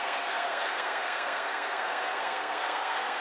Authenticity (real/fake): fake